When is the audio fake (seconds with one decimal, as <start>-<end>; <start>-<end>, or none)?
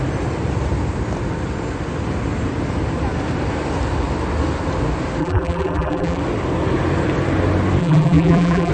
5.2-6.2; 7.8-8.7